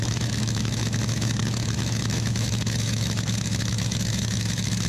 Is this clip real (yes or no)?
no